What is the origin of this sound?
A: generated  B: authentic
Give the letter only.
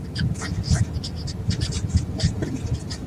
B